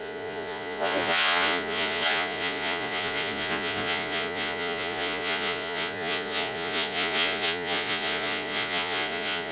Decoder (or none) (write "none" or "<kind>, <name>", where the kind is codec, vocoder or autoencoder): vocoder, Vocos